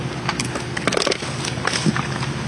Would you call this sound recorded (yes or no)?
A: yes